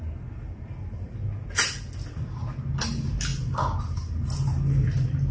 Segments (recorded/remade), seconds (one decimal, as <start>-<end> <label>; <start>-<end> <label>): 0.0-5.3 recorded